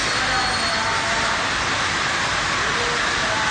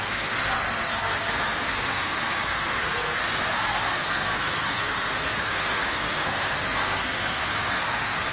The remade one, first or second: second